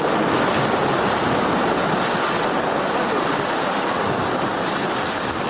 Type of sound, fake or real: real